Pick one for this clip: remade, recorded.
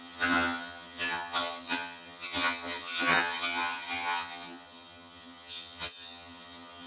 remade